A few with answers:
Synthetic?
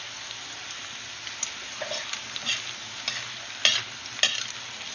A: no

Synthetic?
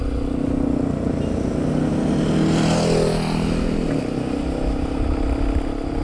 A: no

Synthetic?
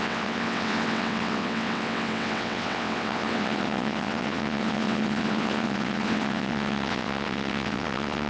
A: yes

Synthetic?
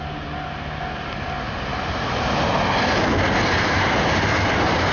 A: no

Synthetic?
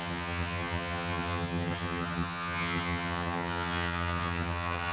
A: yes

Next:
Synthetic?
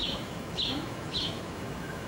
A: yes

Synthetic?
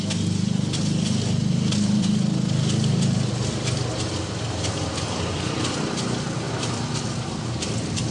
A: no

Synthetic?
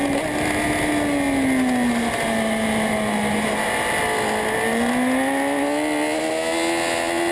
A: no